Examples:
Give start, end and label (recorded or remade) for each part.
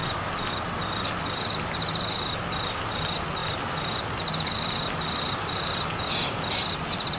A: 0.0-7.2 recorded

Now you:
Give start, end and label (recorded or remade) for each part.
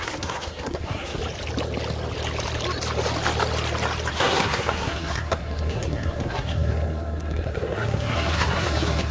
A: 0.0-1.2 remade; 1.2-4.1 recorded; 4.1-9.1 remade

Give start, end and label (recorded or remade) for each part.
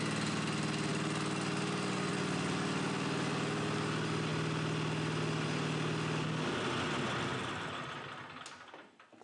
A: 0.0-9.2 recorded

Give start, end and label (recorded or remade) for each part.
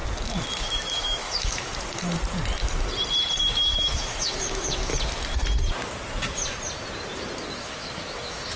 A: 0.0-0.6 recorded; 0.6-1.7 remade; 1.7-3.4 recorded; 3.4-4.9 remade; 4.9-7.5 recorded; 7.5-8.6 remade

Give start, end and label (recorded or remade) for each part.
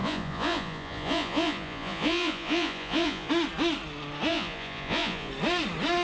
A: 0.0-3.3 remade; 3.3-4.3 recorded; 4.3-5.3 remade; 5.3-6.0 recorded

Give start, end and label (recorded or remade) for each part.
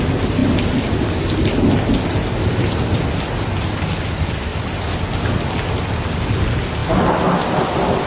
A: 0.0-8.1 recorded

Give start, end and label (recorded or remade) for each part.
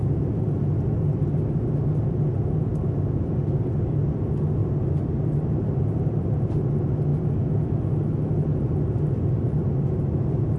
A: 0.0-4.6 recorded; 4.6-6.6 remade; 6.6-10.6 recorded